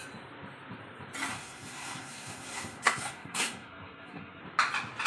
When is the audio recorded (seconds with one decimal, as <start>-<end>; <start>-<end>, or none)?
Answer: 0.0-1.3; 4.4-5.1